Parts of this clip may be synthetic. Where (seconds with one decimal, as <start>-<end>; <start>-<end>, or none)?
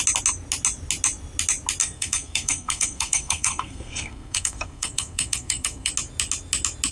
1.8-5.9